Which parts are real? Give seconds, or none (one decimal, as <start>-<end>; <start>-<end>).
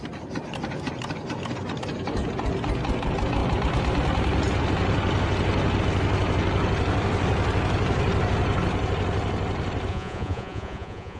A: 0.0-9.9